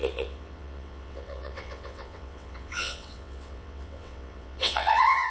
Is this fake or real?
fake